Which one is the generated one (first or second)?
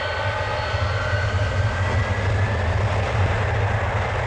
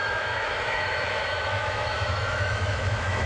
second